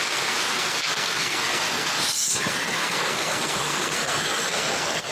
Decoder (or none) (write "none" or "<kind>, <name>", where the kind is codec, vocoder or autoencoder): codec, SNAC